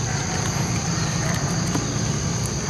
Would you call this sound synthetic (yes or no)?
no